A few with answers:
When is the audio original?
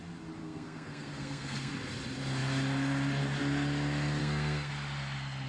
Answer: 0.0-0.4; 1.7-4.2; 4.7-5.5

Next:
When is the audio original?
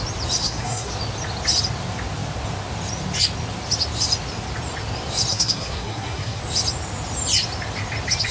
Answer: 0.0-0.4; 0.9-5.3; 6.4-8.3